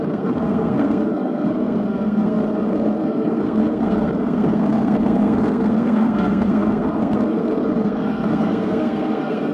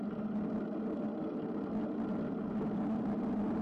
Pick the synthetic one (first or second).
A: first